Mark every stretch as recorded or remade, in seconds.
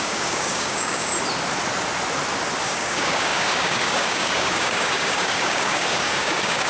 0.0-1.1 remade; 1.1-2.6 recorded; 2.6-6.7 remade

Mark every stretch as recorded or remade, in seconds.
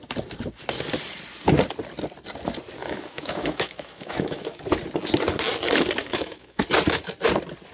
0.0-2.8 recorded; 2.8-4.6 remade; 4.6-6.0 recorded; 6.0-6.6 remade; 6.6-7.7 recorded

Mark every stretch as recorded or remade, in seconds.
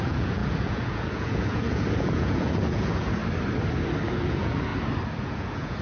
0.0-3.2 remade; 3.2-4.3 recorded; 4.3-4.7 remade; 4.7-5.2 recorded; 5.2-5.8 remade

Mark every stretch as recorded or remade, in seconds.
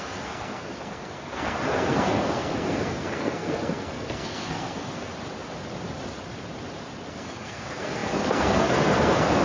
0.0-5.1 remade; 5.1-7.1 recorded; 7.1-9.4 remade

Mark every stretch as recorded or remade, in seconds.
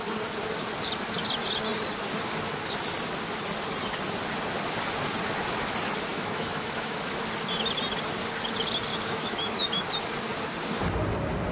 0.0-6.1 recorded; 6.1-7.2 remade; 7.2-8.9 recorded; 8.9-9.8 remade; 9.8-11.5 recorded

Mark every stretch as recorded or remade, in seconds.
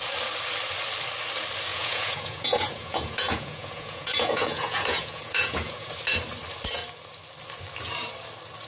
0.0-1.7 recorded; 1.7-5.9 remade; 5.9-8.7 recorded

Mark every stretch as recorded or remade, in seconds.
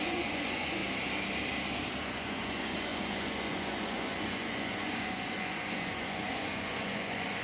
0.0-0.8 remade; 0.8-2.0 recorded; 2.0-7.4 remade